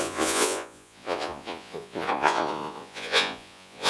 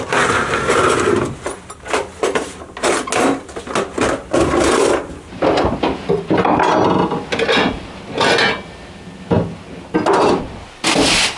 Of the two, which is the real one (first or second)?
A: second